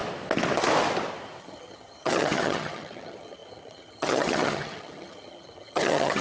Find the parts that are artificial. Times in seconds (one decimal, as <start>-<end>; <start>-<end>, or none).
1.4-6.2